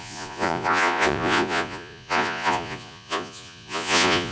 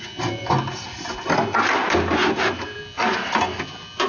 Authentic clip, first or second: second